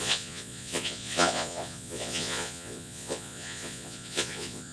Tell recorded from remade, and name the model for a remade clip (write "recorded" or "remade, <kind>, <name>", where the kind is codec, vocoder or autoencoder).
remade, vocoder, Vocos